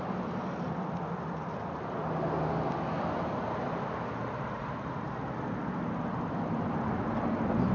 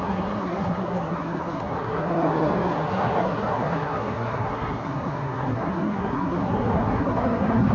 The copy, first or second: second